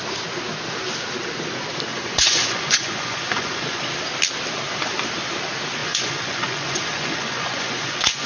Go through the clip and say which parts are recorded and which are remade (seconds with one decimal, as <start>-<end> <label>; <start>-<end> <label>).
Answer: 0.0-1.9 recorded; 1.9-3.8 remade; 3.8-5.8 recorded; 5.8-8.3 remade